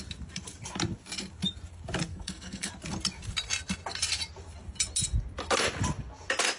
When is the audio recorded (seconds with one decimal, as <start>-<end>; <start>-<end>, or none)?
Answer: 0.0-2.1; 2.7-6.6